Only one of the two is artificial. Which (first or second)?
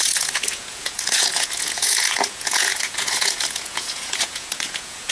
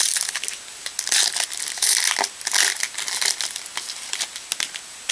first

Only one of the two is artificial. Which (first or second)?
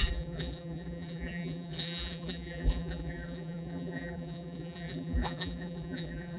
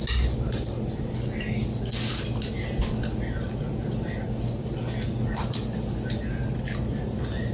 first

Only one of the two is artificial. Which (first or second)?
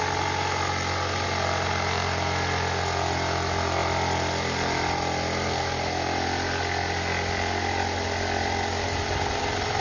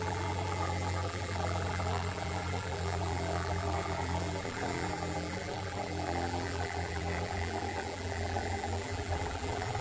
second